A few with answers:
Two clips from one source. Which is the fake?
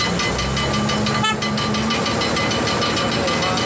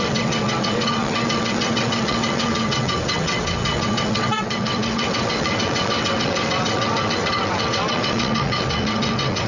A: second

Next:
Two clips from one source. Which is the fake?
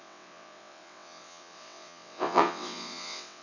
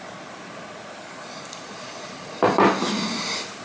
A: first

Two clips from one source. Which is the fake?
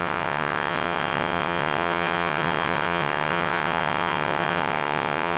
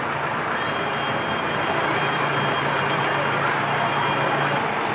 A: first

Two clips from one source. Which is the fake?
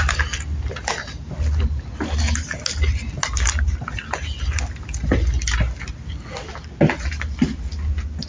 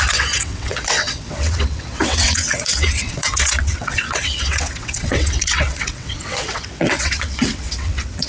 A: second